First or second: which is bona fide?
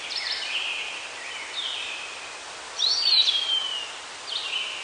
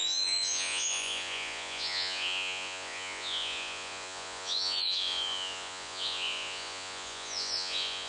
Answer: first